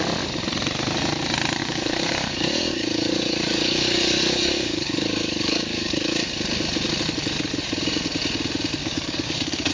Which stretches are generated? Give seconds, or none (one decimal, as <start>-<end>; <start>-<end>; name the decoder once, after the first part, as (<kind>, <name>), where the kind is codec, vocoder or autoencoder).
1.6-6.3 (codec, DAC); 8.8-9.7